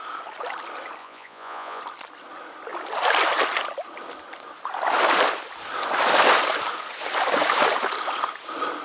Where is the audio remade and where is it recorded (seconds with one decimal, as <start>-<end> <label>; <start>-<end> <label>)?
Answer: 0.0-1.0 recorded; 1.0-1.8 remade; 1.8-8.8 recorded